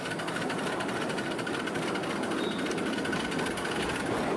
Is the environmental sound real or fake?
real